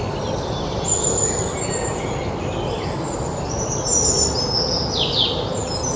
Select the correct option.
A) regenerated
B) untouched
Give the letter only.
B